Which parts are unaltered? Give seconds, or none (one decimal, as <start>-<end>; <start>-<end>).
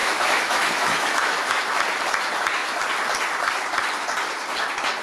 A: 1.6-5.0